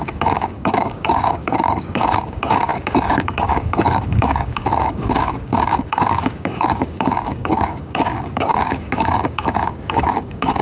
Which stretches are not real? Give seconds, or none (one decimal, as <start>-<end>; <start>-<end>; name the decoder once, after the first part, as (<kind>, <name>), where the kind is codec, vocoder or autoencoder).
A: 0.0-10.6 (codec, DAC)

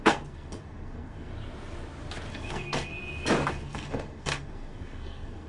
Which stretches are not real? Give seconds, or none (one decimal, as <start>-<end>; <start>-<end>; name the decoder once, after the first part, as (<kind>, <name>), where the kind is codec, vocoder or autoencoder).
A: 0.0-1.3 (codec, SNAC); 2.3-2.9; 3.5-5.5